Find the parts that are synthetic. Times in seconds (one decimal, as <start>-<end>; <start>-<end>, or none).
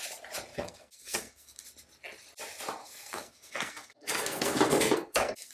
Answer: 0.5-1.6; 2.8-5.5